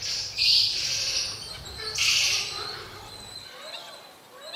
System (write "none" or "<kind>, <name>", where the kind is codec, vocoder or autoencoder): none